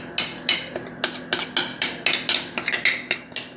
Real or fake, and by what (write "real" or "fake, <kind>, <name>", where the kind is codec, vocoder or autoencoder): real